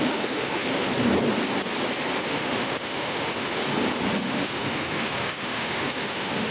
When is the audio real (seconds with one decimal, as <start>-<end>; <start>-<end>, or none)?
0.9-2.2; 3.6-4.2